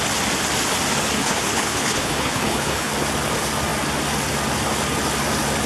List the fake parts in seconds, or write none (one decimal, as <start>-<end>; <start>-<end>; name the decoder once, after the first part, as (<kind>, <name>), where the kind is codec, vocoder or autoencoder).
1.2-2.9 (codec, HILCodec)